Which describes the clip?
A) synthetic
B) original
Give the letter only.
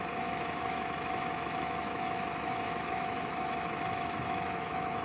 A